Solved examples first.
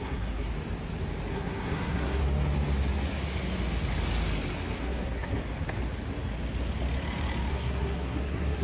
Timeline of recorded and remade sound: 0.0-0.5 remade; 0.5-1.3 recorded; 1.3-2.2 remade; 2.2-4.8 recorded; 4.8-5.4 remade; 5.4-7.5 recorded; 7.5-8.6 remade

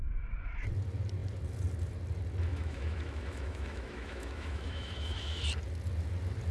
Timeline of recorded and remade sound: 0.0-2.5 recorded; 2.5-5.4 remade; 5.4-6.5 recorded

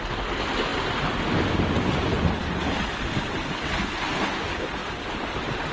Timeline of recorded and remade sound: 0.0-5.7 recorded